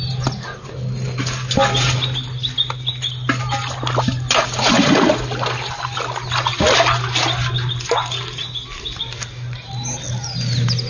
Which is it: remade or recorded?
recorded